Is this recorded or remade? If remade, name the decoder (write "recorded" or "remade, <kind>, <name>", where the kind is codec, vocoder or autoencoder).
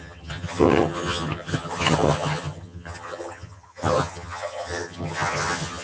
remade, vocoder, HiFi-GAN